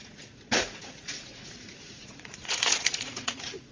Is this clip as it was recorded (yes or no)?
no